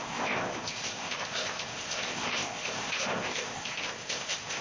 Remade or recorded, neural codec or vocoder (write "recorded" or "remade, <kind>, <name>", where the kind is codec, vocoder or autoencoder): remade, codec, ZipCodec